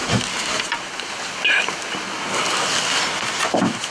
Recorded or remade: recorded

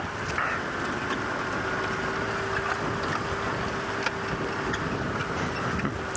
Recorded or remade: recorded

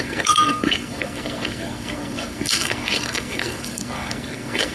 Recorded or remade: remade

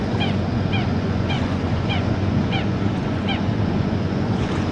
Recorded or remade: remade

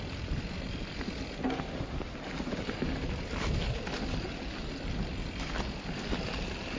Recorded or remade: recorded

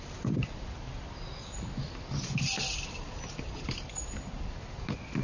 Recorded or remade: recorded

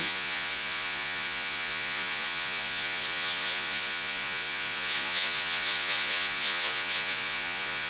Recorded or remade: remade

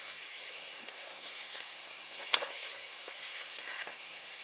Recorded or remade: remade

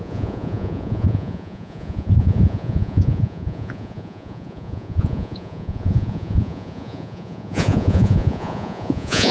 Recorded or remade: remade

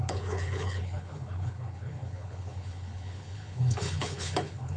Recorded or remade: remade